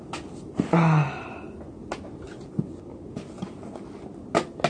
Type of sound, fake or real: real